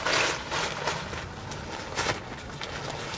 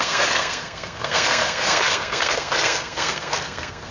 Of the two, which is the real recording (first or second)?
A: first